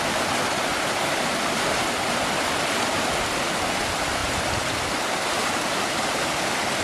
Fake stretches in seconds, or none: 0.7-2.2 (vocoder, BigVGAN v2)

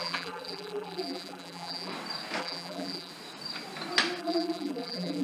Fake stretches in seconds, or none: 0.0-1.9 (vocoder, BigVGAN v2); 2.4-3.1; 4.2-5.2

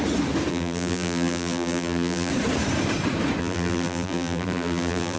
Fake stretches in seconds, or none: 0.5-2.3 (vocoder, BigVGAN v2); 3.4-5.2

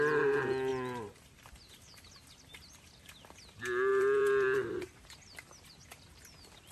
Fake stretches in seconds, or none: 3.9-6.7 (vocoder, BigVGAN v2)